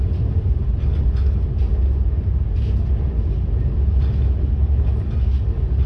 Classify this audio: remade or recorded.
recorded